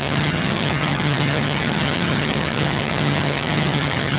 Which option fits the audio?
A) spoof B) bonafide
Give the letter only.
A